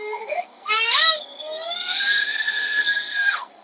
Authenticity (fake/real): fake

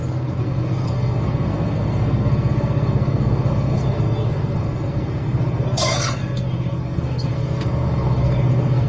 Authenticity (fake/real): fake